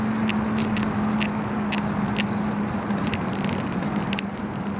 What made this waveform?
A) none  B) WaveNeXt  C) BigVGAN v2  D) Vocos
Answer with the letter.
A